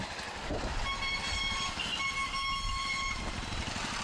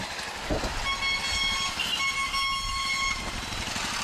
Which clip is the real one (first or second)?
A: second